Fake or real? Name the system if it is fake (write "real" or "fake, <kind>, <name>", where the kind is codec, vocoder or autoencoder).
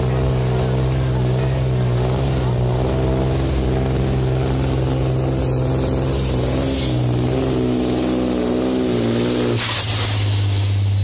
real